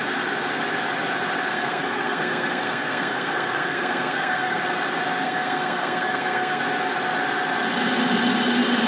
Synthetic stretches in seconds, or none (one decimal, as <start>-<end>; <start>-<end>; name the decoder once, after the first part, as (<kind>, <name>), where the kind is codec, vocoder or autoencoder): 1.5-4.6 (codec, SNAC); 5.2-6.6